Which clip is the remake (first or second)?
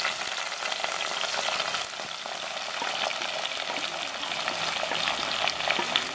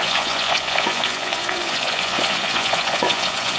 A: second